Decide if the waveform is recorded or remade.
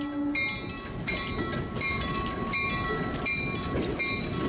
recorded